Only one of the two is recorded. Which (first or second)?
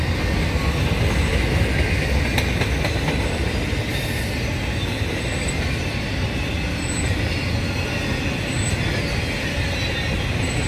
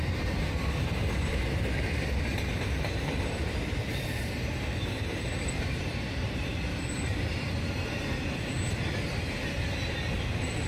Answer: first